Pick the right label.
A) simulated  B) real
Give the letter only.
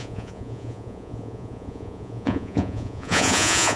A